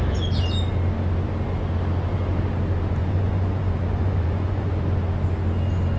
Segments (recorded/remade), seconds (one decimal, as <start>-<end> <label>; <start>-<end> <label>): 0.0-3.0 recorded; 3.0-4.7 remade; 4.7-6.0 recorded